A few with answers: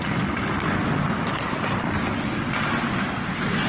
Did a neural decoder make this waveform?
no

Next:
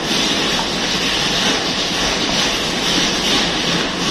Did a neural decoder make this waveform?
no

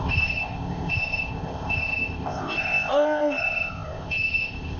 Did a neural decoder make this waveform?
yes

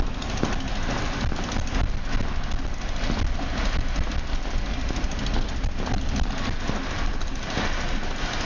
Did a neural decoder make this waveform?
no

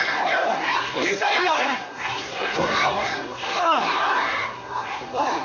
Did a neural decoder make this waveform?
yes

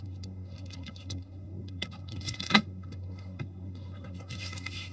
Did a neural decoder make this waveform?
yes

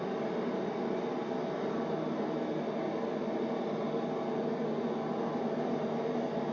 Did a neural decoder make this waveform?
no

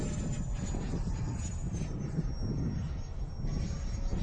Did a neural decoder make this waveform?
no